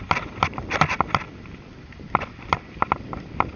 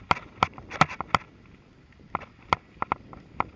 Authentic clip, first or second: second